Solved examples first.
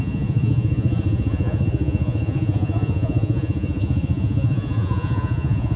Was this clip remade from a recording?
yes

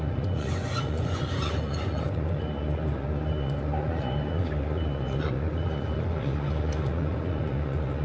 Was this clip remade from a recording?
yes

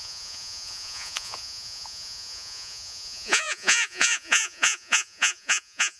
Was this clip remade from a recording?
yes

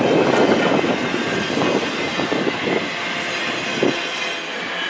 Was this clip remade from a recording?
no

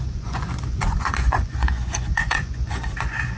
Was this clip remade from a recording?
yes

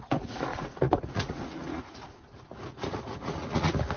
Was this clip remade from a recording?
yes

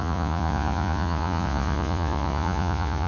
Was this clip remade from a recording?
yes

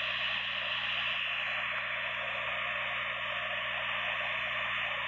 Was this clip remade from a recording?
no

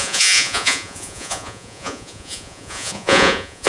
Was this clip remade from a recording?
yes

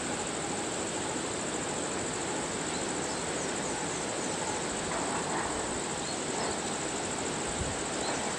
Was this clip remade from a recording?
no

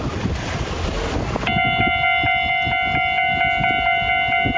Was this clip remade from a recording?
no